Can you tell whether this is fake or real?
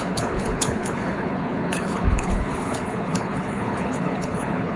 fake